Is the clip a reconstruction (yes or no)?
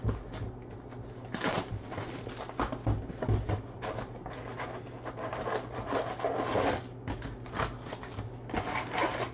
no